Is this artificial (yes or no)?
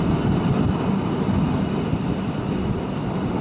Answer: no